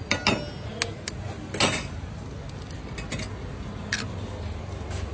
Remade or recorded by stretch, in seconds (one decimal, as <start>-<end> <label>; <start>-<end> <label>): 0.0-5.1 recorded